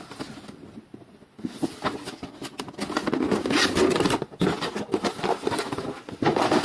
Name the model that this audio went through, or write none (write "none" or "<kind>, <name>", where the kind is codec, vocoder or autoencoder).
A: none